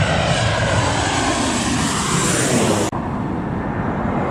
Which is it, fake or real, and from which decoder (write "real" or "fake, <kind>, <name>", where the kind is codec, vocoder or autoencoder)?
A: real